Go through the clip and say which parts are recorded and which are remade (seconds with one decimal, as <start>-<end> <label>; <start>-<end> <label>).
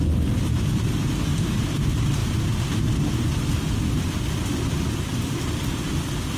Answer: 0.0-1.3 recorded; 1.3-1.8 remade; 1.8-6.4 recorded